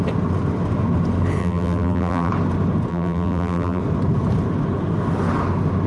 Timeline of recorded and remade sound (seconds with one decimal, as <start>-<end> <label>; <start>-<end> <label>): 0.0-1.4 recorded; 1.4-2.3 remade; 2.3-2.9 recorded; 2.9-3.8 remade; 3.8-5.9 recorded